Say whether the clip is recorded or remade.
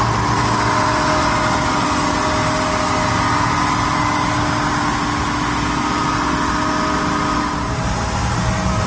recorded